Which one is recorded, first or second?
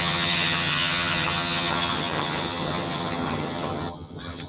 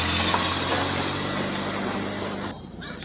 second